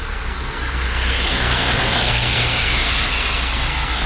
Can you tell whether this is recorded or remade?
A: remade